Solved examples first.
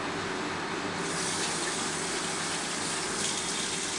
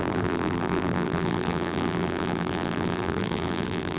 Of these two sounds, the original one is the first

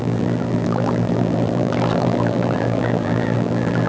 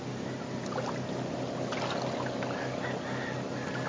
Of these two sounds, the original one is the second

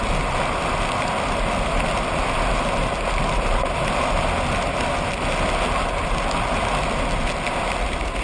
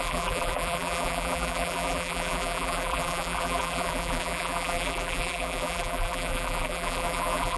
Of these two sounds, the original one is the first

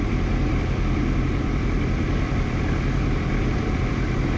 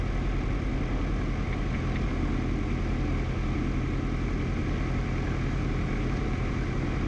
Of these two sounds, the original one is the second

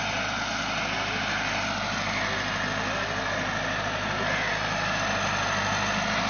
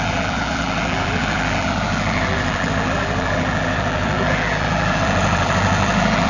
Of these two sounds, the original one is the first